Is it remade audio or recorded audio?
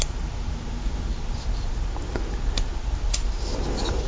remade